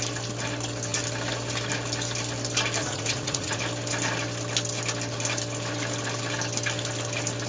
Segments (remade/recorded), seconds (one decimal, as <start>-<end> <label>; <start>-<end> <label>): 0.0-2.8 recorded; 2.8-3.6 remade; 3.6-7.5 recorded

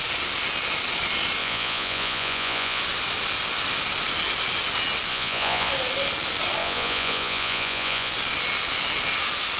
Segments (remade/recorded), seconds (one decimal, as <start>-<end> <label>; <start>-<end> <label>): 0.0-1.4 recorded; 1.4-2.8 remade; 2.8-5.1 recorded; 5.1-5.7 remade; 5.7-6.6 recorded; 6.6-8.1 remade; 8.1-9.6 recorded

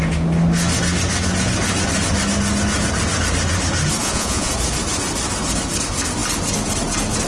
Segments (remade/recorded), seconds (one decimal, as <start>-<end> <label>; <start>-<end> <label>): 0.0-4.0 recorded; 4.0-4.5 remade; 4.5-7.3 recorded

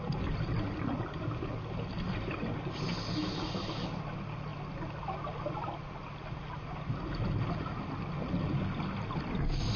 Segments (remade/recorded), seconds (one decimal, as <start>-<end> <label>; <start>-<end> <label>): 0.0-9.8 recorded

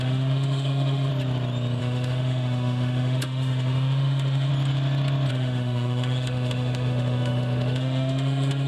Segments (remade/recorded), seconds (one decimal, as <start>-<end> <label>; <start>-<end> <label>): 0.0-1.1 remade; 1.1-1.8 recorded; 1.8-4.5 remade; 4.5-5.3 recorded; 5.3-8.7 remade

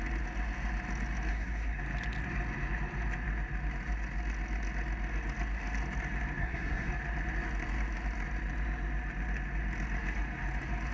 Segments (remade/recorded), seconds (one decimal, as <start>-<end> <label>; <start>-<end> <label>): 0.0-1.3 recorded; 1.3-1.8 remade; 1.8-6.4 recorded; 6.4-6.9 remade; 6.9-10.9 recorded

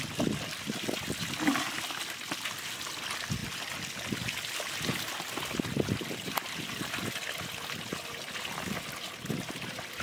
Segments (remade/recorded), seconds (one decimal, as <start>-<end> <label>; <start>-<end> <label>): 0.0-10.0 recorded

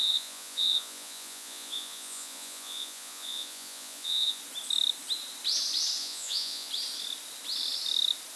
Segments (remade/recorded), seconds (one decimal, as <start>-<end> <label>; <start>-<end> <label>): 0.0-4.4 remade; 4.4-6.0 recorded; 6.0-6.7 remade; 6.7-8.4 recorded